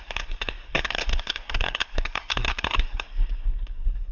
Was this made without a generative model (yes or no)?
no